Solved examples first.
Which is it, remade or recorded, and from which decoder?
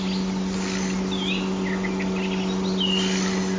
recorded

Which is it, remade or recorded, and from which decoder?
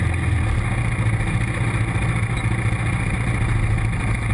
recorded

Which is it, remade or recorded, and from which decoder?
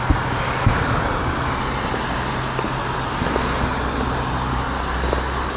recorded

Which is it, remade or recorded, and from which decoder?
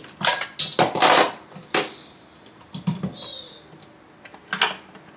recorded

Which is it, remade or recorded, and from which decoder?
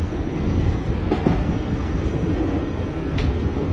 remade, codec, SNAC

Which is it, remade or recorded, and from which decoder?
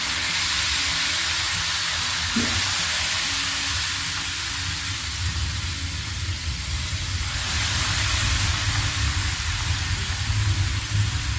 recorded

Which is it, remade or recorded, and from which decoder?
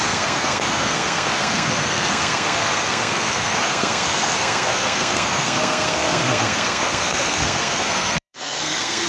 remade, codec, SNAC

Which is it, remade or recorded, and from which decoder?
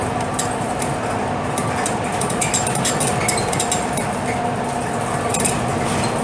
recorded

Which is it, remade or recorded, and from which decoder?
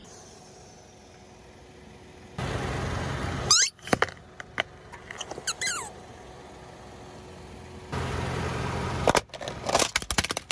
recorded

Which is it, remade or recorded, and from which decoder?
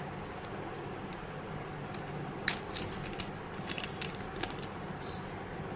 recorded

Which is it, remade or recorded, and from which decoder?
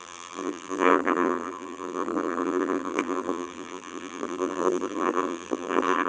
remade, vocoder, BigVGAN v2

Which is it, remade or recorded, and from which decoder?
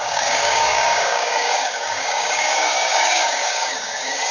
remade, codec, DAC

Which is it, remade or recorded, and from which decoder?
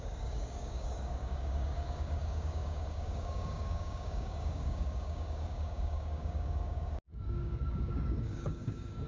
remade, codec, DAC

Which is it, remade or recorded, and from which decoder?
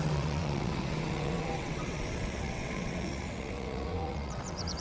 remade, vocoder, WaveNeXt